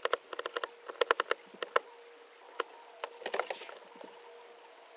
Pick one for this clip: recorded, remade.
recorded